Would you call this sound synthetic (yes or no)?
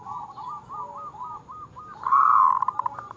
no